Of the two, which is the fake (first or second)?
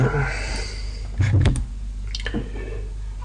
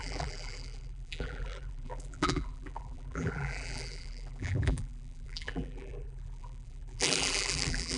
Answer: second